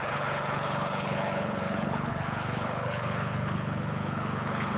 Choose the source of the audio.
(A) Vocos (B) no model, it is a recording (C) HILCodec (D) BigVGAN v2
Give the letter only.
C